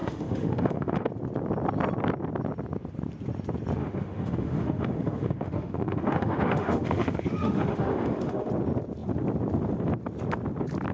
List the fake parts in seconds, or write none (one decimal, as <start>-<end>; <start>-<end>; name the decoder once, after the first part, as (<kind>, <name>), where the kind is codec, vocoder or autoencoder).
0.0-1.1 (autoencoder, DAC-VAE); 3.8-8.5